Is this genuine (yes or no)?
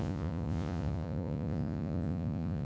no